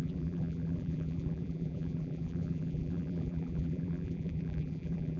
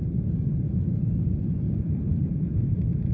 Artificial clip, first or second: first